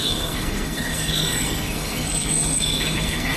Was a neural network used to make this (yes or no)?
yes